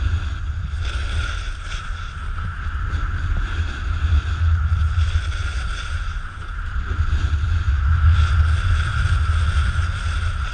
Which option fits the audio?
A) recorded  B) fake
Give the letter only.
A